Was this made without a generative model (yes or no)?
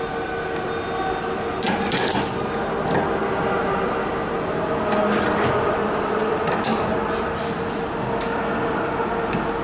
yes